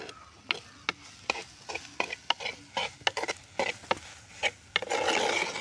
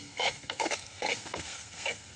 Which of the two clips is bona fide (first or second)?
first